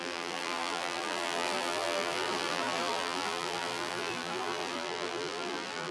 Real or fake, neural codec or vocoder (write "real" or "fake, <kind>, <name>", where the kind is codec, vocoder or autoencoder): fake, vocoder, BigVGAN v2